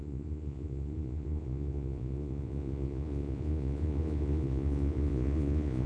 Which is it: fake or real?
fake